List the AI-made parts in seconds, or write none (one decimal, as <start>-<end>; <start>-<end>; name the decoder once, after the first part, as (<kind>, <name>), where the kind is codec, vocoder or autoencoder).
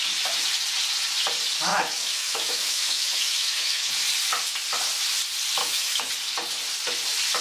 1.7-3.9 (autoencoder, DAC-VAE); 5.6-6.1